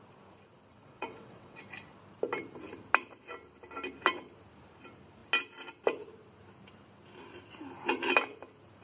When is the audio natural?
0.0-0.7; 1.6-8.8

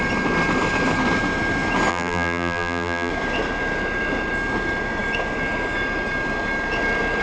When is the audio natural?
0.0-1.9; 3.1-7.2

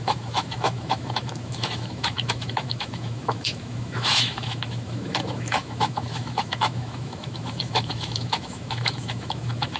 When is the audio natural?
none

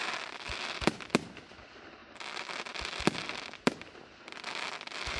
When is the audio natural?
0.0-5.2

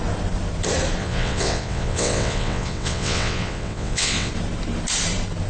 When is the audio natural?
0.0-1.0; 4.3-5.5

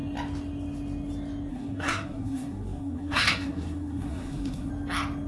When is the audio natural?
0.0-1.5; 4.7-5.3

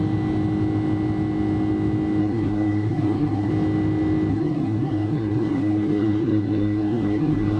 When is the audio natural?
0.0-2.2; 3.5-4.3